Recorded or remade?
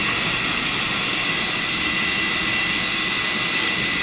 recorded